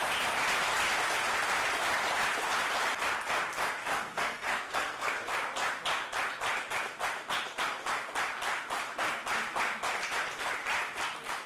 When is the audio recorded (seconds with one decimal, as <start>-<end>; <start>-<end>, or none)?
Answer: 0.0-3.9; 5.1-11.5